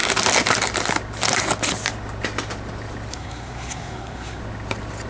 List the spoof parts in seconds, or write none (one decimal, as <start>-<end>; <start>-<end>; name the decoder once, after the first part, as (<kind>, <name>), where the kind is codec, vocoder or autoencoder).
3.1-4.4 (codec, SNAC)